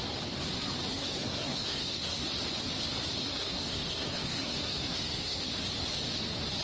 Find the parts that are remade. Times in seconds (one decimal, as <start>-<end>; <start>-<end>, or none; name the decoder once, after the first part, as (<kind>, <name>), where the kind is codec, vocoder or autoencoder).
0.9-2.2 (codec, SNAC); 3.2-5.5